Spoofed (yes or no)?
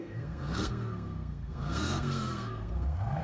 yes